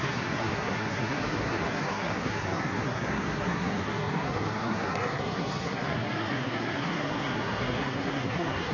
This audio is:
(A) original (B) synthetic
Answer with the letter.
B